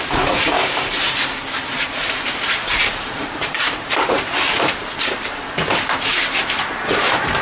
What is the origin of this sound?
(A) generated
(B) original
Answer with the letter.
A